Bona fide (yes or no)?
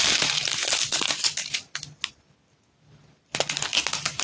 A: yes